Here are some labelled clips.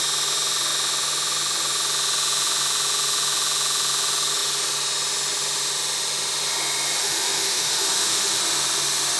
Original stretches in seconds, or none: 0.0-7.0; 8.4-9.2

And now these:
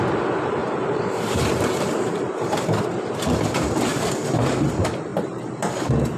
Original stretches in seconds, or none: 0.0-0.6; 3.1-3.9; 4.5-5.1; 5.8-6.2

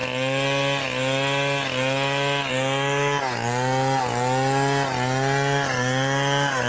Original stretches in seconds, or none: 0.0-6.7